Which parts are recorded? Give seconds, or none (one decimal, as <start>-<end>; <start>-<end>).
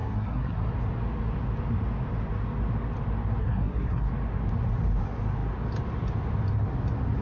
0.7-3.4; 4.1-7.2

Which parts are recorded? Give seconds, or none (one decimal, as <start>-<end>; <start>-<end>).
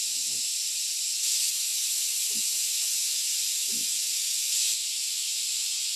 0.5-1.2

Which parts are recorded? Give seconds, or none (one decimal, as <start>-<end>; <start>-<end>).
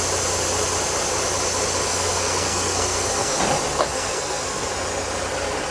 0.0-1.9; 3.4-3.8; 4.7-5.7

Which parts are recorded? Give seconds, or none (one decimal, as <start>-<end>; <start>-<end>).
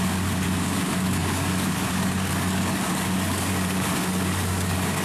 none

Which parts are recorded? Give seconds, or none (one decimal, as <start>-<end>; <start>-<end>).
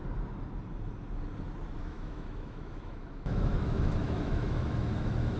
0.0-1.8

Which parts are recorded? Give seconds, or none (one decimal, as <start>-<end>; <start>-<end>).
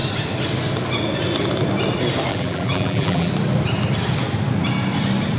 0.0-2.3; 3.3-5.4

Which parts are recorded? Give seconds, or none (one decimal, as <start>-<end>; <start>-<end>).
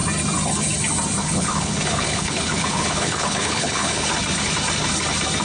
0.0-1.2; 4.1-5.4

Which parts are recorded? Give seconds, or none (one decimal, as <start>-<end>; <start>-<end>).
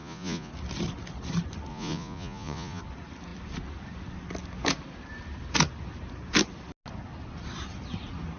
0.5-1.7; 2.8-8.4